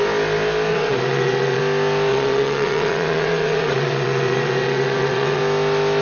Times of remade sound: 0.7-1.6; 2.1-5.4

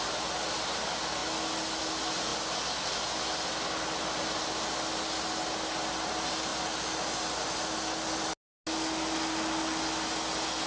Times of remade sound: none

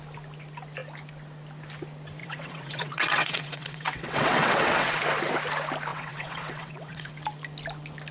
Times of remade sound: 2.2-5.0; 5.9-7.1

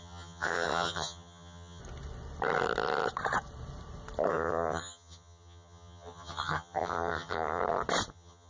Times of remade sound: 0.0-1.8; 4.3-7.6; 8.1-8.5

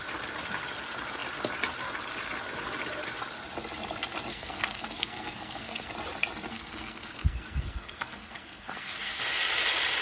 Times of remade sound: 4.3-5.9; 6.5-9.2

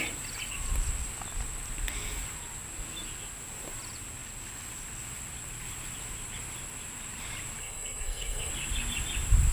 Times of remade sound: 7.6-8.5

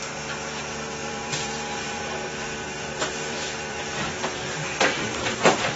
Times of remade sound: 1.0-4.5

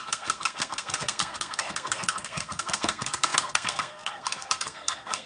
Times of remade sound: 0.0-5.3